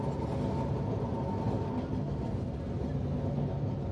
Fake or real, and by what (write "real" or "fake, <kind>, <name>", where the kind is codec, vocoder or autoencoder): real